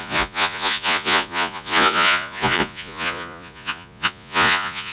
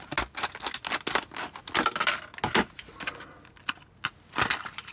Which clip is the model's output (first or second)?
first